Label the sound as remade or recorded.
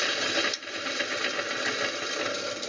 recorded